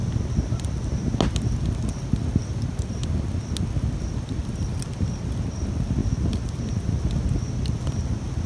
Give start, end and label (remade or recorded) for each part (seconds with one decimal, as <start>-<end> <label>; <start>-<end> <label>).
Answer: 0.0-8.5 recorded